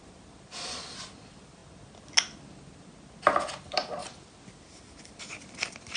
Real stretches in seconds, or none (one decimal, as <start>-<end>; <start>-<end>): 1.6-3.1; 4.0-5.2

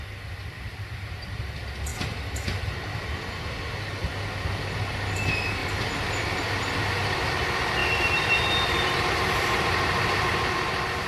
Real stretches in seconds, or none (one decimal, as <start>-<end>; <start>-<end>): 0.0-0.4; 1.4-5.6; 7.3-7.8; 10.6-11.1